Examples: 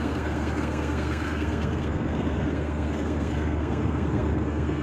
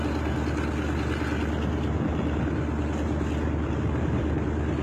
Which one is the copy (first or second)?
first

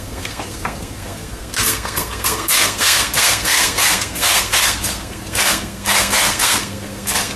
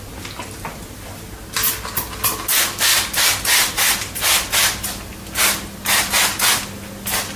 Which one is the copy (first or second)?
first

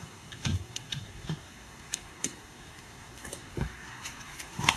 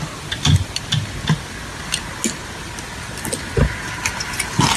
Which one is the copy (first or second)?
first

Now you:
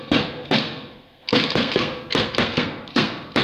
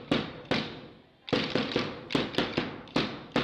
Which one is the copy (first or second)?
first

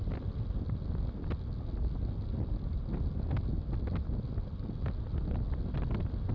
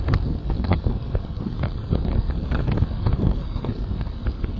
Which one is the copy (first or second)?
second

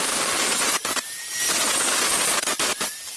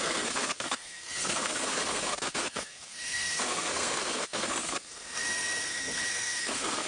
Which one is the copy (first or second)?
second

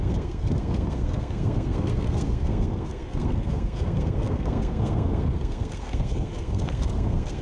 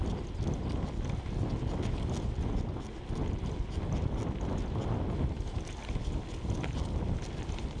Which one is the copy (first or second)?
first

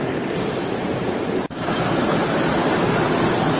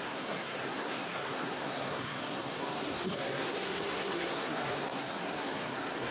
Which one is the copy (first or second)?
second